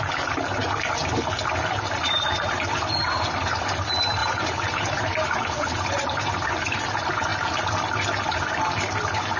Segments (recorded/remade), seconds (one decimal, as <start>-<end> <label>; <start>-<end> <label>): 0.0-4.2 recorded; 4.2-6.5 remade; 6.5-9.4 recorded